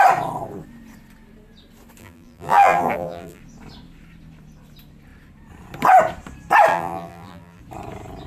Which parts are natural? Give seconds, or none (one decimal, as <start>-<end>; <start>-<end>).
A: 0.0-2.0; 3.4-6.7; 7.6-8.3